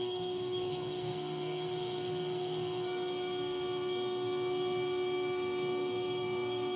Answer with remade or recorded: remade